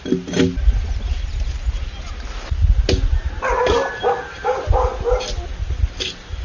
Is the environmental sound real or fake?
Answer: real